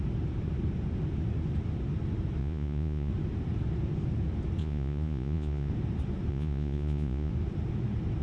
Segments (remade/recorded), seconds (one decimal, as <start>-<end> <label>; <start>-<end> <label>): 0.0-2.4 recorded; 2.4-3.1 remade; 3.1-4.6 recorded; 4.6-5.7 remade; 5.7-6.3 recorded; 6.3-7.3 remade; 7.3-8.2 recorded